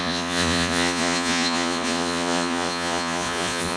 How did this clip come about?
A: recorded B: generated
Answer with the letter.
B